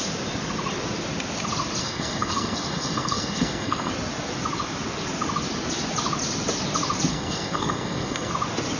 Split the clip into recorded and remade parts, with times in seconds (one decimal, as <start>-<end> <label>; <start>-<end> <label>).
0.0-1.8 recorded; 1.8-3.9 remade; 3.9-7.1 recorded; 7.1-8.3 remade; 8.3-8.8 recorded